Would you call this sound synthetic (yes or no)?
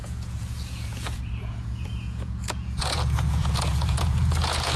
yes